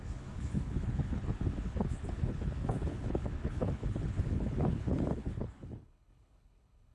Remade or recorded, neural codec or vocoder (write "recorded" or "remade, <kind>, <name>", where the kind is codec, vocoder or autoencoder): remade, codec, HILCodec